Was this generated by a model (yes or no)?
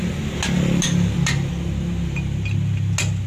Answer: no